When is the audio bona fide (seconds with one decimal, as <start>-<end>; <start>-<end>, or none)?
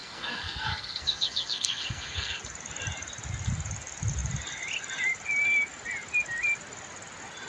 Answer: 2.4-7.5